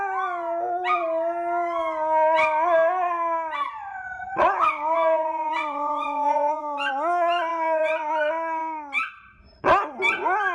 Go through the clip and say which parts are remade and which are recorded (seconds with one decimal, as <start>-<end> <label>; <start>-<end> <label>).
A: 0.0-3.9 recorded; 3.9-6.9 remade; 6.9-7.5 recorded; 7.5-8.1 remade; 8.1-10.5 recorded